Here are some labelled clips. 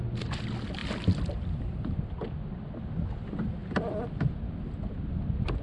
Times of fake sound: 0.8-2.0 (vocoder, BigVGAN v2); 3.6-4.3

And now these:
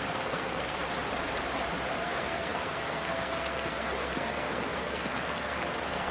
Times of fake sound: 0.0-0.8 (codec, SNAC); 2.0-6.1

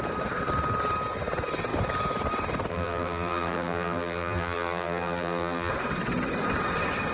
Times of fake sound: 2.7-5.7 (vocoder, BigVGAN v2)

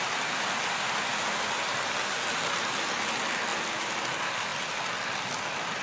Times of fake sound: none